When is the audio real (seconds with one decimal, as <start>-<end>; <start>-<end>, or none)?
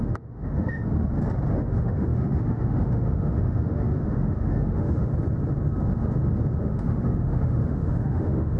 0.8-1.5; 5.1-6.6